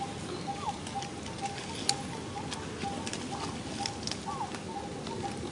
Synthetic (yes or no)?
no